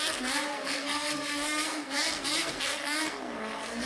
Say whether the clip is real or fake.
fake